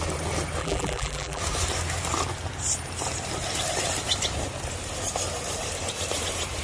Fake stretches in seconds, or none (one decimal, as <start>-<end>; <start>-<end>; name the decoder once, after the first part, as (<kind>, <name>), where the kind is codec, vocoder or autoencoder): 0.6-1.4 (vocoder, BigVGAN v2)